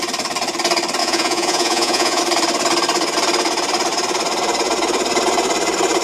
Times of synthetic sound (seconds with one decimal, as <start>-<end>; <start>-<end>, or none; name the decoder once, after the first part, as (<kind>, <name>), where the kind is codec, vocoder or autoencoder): 1.0-2.2 (vocoder, Vocos)